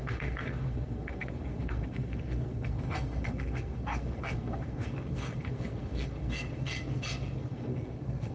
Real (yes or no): no